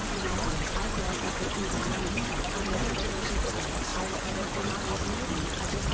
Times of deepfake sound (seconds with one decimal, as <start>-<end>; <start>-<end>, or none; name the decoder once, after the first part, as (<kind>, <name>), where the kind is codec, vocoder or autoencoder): 0.0-3.5 (vocoder, Vocos); 3.9-4.7